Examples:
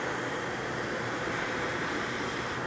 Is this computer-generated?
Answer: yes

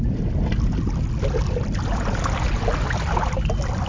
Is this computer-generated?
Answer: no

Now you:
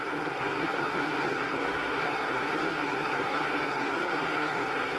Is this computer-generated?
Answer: yes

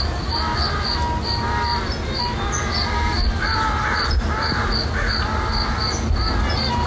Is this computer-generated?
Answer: no